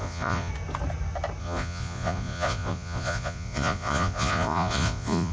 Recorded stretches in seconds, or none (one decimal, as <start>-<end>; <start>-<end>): 0.5-1.4